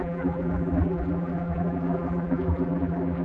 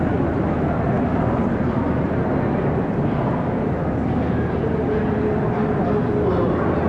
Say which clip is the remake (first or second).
first